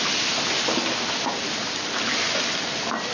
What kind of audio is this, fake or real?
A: real